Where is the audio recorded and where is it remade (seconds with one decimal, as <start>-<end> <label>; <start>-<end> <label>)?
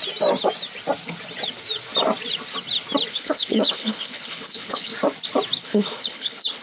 0.0-3.1 recorded; 3.1-4.9 remade; 4.9-5.6 recorded; 5.6-6.6 remade